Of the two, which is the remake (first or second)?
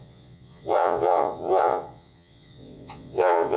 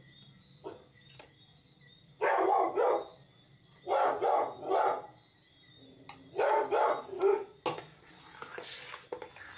first